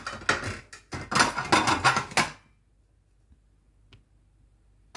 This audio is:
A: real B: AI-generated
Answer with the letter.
A